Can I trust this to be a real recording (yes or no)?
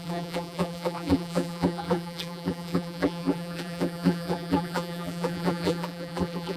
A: no